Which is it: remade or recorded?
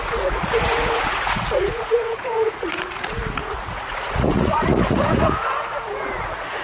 remade